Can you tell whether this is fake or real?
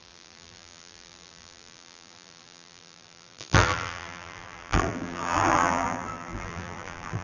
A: fake